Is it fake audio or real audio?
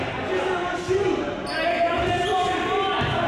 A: real